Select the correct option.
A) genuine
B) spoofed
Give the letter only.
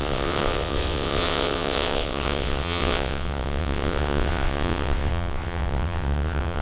B